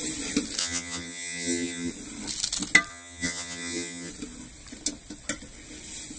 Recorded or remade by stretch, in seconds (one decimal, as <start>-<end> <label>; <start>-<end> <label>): 0.0-0.6 recorded; 0.6-1.9 remade; 1.9-2.9 recorded; 2.9-4.1 remade; 4.1-6.2 recorded